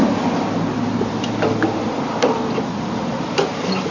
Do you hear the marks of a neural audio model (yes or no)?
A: no